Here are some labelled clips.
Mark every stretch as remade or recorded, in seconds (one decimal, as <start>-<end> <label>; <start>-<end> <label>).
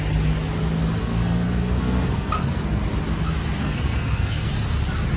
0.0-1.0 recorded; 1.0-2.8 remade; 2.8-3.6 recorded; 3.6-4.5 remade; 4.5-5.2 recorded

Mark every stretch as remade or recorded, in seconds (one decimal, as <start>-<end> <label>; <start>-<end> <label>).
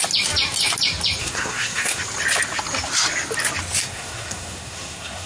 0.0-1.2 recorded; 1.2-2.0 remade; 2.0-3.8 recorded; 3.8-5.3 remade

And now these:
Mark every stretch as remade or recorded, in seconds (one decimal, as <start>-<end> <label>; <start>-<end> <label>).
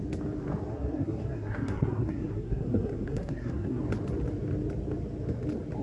0.0-0.7 recorded; 0.7-3.8 remade; 3.8-5.8 recorded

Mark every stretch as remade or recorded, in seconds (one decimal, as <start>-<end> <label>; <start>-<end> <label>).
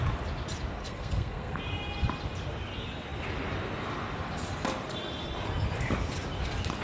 0.0-0.8 recorded; 0.8-1.6 remade; 1.6-6.8 recorded